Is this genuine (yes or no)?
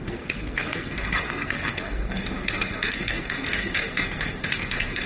no